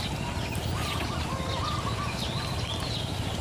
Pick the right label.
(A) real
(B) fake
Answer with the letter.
A